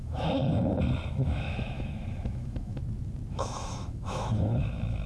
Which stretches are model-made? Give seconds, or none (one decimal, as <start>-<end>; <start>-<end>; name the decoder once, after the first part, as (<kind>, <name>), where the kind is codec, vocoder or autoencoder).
0.0-0.4 (autoencoder, DAC-VAE); 1.1-2.8; 3.3-5.1